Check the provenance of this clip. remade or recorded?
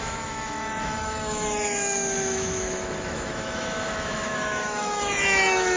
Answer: remade